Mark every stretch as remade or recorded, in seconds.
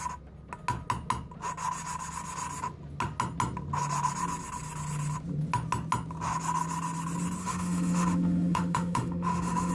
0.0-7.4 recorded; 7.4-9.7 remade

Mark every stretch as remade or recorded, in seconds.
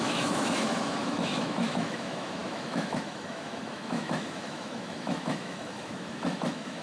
0.0-6.8 remade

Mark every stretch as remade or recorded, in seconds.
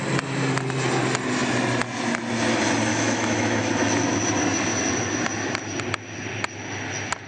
0.0-2.9 recorded; 2.9-3.7 remade; 3.7-7.3 recorded